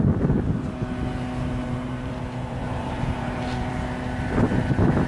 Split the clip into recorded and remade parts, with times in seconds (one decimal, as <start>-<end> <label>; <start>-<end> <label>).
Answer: 0.0-1.6 recorded; 1.6-3.7 remade; 3.7-5.1 recorded